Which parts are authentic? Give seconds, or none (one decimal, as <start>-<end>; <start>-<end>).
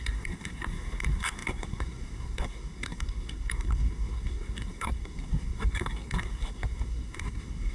none